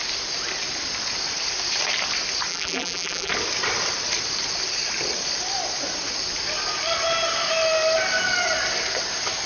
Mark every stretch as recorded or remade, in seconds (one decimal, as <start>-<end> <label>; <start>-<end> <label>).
0.0-2.5 recorded; 2.5-3.3 remade; 3.3-9.5 recorded